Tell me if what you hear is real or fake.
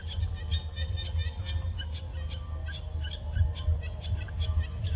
real